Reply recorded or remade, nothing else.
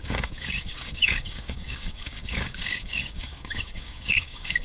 remade